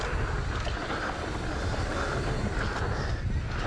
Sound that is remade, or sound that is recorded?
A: recorded